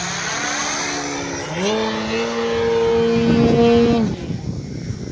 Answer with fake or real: real